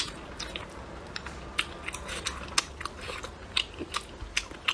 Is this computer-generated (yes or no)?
no